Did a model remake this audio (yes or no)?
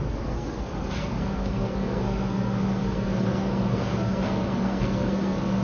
yes